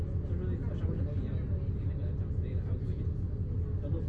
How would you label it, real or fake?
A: real